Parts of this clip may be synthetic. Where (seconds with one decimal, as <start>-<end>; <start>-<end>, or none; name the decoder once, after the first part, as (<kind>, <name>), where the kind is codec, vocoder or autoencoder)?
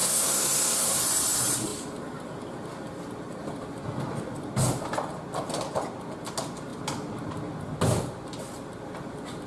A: 0.0-1.0 (codec, SNAC)